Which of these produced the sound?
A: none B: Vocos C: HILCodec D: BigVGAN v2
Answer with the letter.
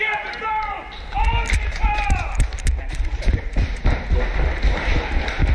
A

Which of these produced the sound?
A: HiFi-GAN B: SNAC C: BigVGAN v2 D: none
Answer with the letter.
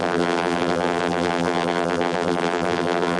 C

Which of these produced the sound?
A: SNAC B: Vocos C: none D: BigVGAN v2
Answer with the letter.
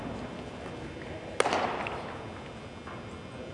C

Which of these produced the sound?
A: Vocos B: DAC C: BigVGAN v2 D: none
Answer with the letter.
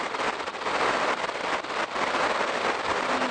C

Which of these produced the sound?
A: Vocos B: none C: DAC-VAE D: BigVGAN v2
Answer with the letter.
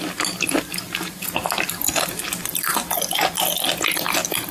B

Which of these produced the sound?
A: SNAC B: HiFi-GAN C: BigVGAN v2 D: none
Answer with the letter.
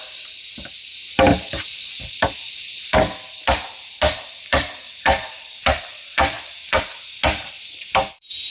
C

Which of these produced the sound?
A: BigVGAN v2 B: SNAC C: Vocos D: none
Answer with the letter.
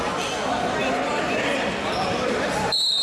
A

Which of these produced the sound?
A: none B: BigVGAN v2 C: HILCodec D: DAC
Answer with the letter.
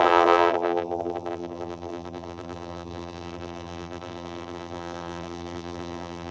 B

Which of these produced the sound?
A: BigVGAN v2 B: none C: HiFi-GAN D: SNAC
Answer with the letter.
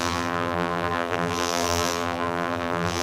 A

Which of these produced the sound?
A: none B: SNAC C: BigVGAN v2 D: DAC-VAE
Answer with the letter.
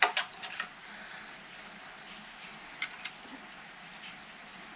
A